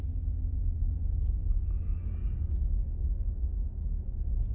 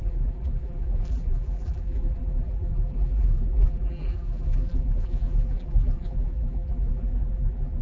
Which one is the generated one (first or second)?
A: second